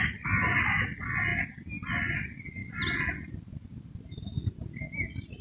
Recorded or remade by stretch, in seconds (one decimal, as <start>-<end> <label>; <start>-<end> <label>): 0.0-5.4 recorded